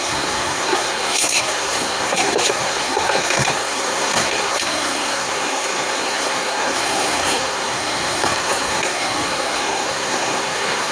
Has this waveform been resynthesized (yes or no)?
yes